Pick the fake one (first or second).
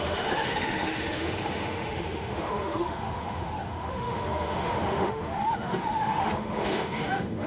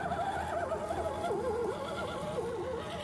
first